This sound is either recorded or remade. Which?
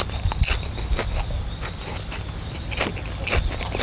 remade